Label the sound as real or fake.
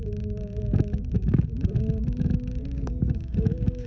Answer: fake